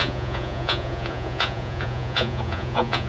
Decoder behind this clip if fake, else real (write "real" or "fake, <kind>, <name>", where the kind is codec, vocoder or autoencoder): fake, vocoder, Vocos